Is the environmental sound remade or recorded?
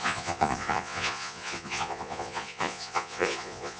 remade